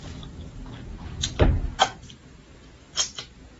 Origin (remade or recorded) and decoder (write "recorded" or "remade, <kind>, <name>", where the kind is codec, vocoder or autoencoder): recorded